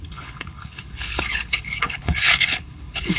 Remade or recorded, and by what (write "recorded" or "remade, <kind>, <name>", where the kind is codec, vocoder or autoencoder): remade, codec, HILCodec